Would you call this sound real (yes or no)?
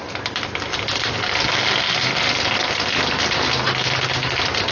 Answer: yes